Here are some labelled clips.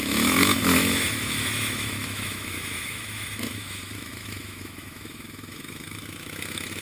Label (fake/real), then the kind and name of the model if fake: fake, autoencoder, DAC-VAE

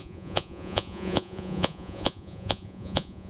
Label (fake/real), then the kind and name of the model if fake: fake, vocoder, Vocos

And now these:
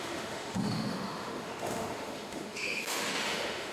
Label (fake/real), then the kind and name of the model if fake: fake, autoencoder, DAC-VAE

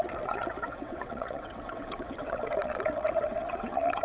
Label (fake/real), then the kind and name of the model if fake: fake, vocoder, WaveNeXt